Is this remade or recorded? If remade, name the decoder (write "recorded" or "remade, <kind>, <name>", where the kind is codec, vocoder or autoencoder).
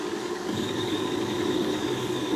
remade, codec, DAC